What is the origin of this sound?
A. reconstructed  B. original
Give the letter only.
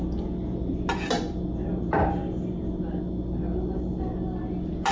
B